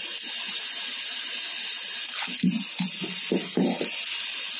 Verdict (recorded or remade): recorded